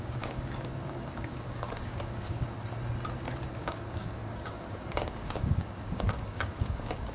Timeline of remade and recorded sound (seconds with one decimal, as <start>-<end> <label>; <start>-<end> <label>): 0.0-2.5 remade; 2.5-3.6 recorded; 3.6-7.1 remade

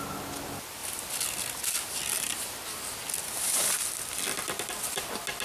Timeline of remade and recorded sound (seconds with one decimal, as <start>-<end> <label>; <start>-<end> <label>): 0.0-5.4 recorded

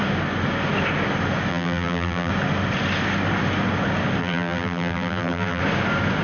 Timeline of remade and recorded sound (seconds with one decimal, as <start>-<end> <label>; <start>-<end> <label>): 0.0-1.5 recorded; 1.5-2.3 remade; 2.3-4.2 recorded; 4.2-5.6 remade; 5.6-6.2 recorded

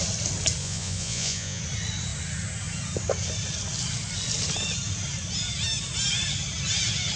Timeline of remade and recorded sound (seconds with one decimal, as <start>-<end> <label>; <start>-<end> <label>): 0.0-0.6 recorded; 0.6-1.6 remade; 1.6-7.2 recorded

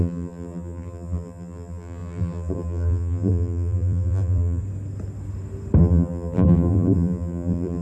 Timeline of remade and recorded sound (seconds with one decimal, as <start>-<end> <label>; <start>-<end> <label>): 0.0-4.6 remade; 4.6-5.8 recorded; 5.8-7.8 remade